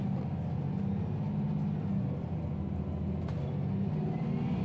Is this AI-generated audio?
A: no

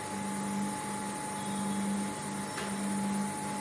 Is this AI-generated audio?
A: no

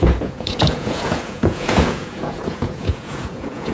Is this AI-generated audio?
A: yes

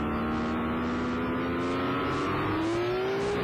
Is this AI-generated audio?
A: no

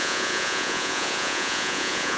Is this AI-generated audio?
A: yes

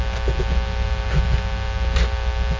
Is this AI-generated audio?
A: no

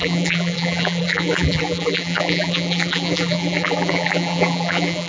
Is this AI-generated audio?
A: yes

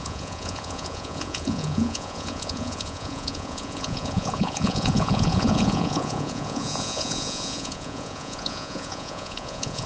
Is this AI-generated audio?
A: yes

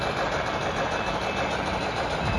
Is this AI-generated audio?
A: yes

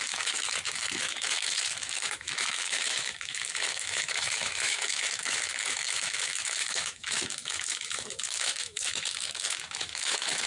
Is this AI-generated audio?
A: yes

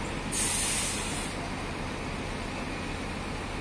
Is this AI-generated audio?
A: no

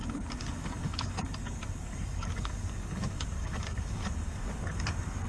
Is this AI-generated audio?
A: yes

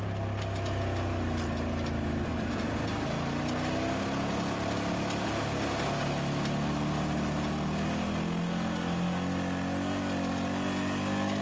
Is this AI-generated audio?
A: no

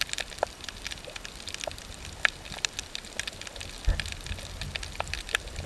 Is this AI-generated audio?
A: no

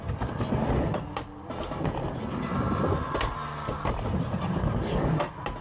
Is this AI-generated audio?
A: no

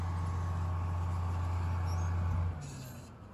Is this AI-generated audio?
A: no